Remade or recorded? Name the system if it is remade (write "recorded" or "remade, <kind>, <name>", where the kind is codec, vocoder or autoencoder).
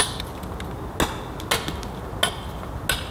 recorded